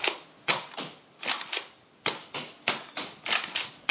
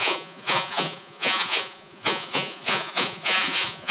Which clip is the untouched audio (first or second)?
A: first